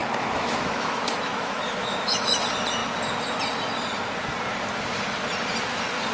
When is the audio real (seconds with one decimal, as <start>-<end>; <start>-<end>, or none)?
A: 2.4-6.1